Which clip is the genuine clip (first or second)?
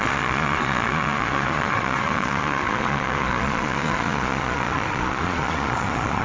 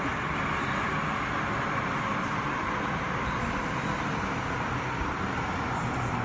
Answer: second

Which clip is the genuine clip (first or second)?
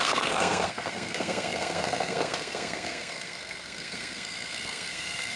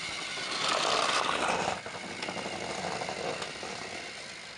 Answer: second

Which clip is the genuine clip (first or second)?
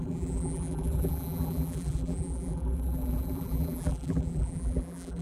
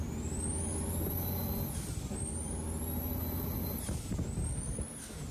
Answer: second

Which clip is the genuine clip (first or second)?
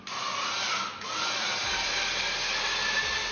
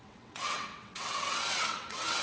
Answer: first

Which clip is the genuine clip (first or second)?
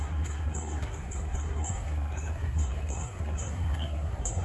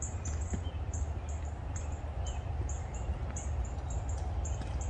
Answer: second